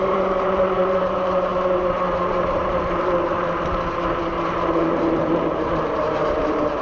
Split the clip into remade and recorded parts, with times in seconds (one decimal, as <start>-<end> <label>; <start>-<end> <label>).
0.0-1.5 remade; 1.5-2.2 recorded; 2.2-6.8 remade